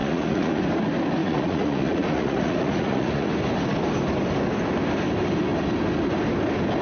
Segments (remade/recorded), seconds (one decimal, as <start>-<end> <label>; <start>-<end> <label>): 0.0-0.6 remade; 0.6-1.2 recorded; 1.2-3.3 remade; 3.3-6.8 recorded